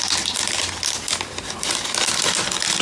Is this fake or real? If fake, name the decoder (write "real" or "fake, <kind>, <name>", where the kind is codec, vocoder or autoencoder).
real